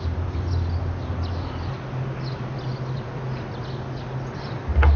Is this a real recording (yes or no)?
yes